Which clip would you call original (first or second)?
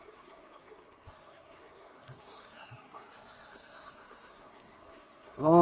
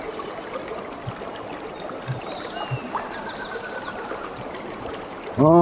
second